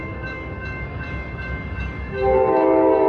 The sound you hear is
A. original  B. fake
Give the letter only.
B